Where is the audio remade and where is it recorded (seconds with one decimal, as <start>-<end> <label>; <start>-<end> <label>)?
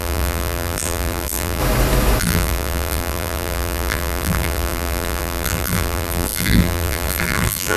0.0-1.6 remade; 1.6-2.2 recorded; 2.2-7.8 remade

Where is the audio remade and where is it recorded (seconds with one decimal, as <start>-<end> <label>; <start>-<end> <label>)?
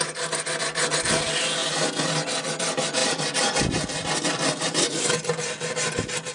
0.0-1.6 remade; 1.6-2.4 recorded; 2.4-6.3 remade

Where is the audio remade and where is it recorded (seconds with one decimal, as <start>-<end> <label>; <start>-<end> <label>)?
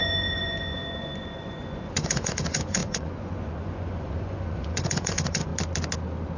0.0-5.5 remade; 5.5-6.4 recorded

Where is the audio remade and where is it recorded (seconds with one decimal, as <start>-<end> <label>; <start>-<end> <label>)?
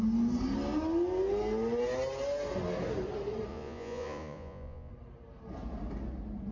0.0-3.5 recorded; 3.5-4.9 remade; 4.9-6.5 recorded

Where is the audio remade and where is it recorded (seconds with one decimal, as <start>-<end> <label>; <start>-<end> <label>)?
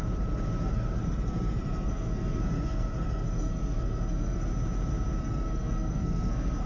0.0-0.7 recorded; 0.7-4.5 remade; 4.5-5.2 recorded; 5.2-6.7 remade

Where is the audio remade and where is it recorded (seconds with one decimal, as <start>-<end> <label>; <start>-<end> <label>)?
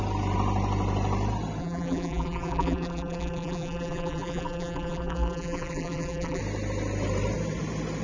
0.0-1.6 recorded; 1.6-6.4 remade; 6.4-8.0 recorded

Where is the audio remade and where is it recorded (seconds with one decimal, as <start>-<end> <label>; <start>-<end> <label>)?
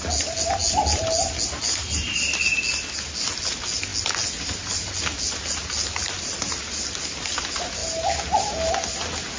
0.0-9.4 recorded